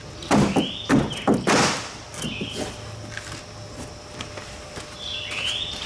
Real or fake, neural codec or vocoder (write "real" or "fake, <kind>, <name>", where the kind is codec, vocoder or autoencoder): real